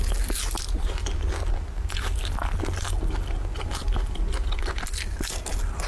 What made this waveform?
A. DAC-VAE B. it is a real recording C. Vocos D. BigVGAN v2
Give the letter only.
B